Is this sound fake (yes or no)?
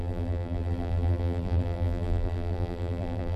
yes